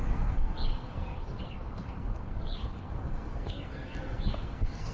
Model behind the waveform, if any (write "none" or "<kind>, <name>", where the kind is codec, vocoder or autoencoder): codec, SNAC